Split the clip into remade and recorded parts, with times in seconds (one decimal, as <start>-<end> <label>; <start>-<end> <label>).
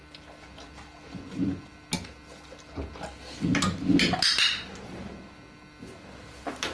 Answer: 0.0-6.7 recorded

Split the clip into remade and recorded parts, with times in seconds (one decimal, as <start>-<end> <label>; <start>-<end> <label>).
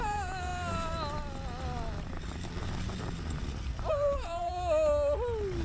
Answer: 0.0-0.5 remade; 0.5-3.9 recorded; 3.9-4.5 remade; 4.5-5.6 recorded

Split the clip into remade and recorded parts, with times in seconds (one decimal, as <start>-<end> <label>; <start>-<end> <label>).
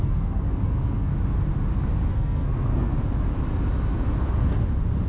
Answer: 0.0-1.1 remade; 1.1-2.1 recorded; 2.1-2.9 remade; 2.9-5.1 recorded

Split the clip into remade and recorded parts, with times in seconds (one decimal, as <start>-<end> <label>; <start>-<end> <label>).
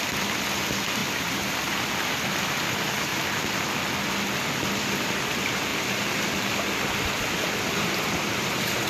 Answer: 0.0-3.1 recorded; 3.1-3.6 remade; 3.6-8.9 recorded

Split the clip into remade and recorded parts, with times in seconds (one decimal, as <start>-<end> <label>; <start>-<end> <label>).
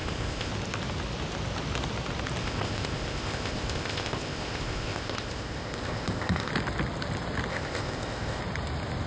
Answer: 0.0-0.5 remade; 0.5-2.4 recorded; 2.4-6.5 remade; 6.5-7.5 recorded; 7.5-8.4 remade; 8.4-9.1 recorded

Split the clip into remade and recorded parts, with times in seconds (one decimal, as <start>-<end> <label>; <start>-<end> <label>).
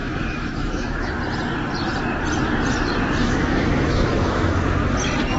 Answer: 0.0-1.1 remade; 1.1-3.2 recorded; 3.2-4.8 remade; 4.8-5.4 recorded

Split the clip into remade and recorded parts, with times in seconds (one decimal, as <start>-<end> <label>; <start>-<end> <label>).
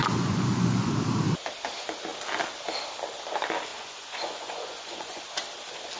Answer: 0.0-0.9 remade; 0.9-3.7 recorded; 3.7-5.2 remade; 5.2-6.0 recorded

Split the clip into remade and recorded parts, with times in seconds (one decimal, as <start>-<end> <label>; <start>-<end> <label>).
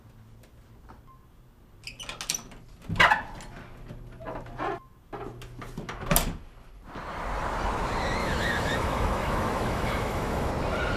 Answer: 0.0-8.2 recorded; 8.2-10.5 remade; 10.5-11.0 recorded